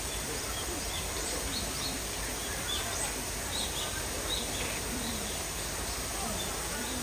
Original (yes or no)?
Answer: no